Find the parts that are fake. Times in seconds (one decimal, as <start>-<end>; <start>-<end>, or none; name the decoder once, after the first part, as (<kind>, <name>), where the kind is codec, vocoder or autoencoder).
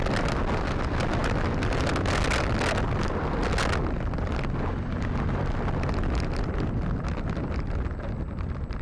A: none